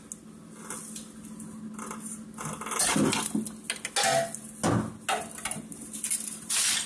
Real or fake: real